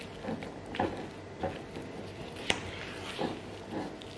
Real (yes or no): yes